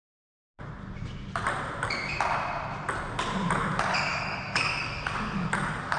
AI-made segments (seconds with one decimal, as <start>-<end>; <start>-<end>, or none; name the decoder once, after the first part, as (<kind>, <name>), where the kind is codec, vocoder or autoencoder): 4.1-6.0 (codec, DAC)

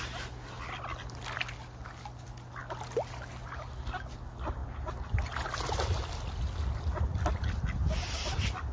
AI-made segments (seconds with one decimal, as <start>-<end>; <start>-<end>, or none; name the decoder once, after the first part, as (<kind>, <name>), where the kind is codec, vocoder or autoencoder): none

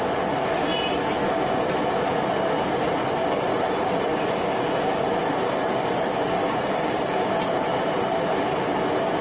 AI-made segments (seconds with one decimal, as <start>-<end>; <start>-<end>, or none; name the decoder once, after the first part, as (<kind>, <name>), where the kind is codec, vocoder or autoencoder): 4.1-5.1 (codec, DAC); 6.4-7.3

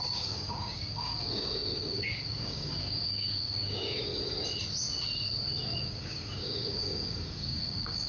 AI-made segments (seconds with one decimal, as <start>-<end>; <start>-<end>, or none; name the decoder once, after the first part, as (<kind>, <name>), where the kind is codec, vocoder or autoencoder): 0.0-4.1 (codec, DAC); 5.8-8.1